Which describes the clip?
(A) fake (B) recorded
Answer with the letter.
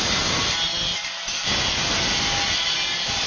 B